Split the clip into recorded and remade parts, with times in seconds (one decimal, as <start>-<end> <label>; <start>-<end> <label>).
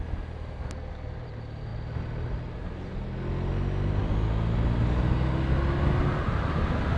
0.0-7.0 recorded